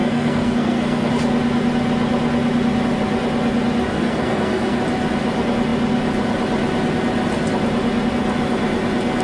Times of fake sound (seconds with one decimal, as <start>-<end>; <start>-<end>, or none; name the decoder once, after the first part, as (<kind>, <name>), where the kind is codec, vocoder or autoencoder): 0.0-1.1 (codec, SNAC); 3.9-4.8